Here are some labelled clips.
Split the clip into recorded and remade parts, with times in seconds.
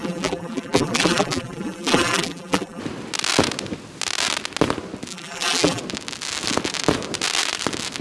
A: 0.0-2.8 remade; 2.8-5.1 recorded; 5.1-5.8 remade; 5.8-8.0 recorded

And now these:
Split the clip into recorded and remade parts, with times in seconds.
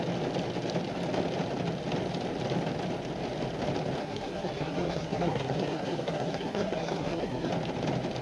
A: 0.0-4.0 recorded; 4.0-7.5 remade; 7.5-8.2 recorded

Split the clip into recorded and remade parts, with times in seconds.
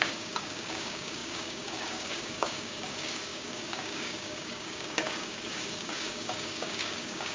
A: 0.0-7.3 remade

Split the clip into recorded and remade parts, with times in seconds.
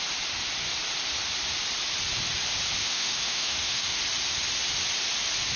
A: 0.0-2.8 recorded; 2.8-4.0 remade; 4.0-5.6 recorded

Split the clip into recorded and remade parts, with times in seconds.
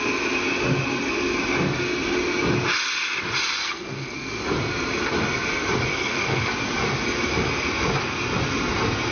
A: 0.0-3.6 recorded; 3.6-4.4 remade; 4.4-5.9 recorded; 5.9-6.5 remade; 6.5-9.1 recorded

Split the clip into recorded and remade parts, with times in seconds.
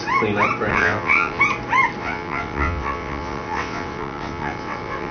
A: 0.0-0.7 recorded; 0.7-1.4 remade; 1.4-2.0 recorded; 2.0-5.1 remade